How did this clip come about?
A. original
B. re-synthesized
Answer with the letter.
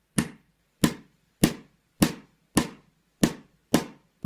A